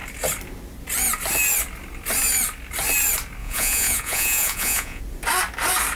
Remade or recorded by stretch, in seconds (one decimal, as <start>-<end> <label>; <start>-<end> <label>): 0.0-3.4 recorded; 3.4-5.0 remade; 5.0-6.0 recorded